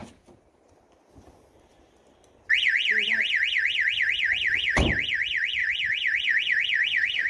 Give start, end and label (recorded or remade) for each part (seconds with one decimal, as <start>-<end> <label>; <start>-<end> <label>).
0.0-5.6 recorded; 5.6-7.3 remade

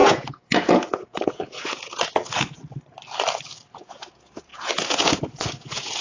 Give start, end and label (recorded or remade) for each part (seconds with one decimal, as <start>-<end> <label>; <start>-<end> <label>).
0.0-2.6 remade; 2.6-3.7 recorded; 3.7-6.0 remade

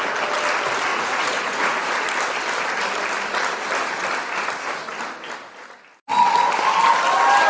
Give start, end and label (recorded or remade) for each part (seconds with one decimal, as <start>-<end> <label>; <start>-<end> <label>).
0.0-0.9 recorded; 0.9-1.9 remade; 1.9-7.5 recorded

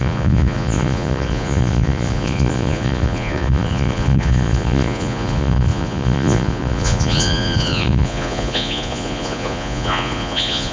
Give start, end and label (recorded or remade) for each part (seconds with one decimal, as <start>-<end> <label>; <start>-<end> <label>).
0.0-10.7 remade

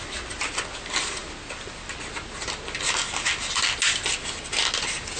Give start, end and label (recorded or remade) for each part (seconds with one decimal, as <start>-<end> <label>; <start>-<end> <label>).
0.0-5.2 recorded

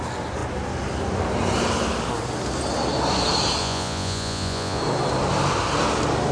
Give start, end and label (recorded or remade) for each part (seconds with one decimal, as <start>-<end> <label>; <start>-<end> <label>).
0.0-3.6 recorded; 3.6-4.8 remade; 4.8-6.3 recorded

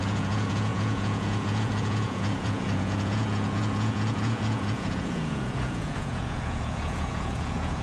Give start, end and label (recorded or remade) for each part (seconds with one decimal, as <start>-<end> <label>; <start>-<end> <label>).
0.0-7.8 remade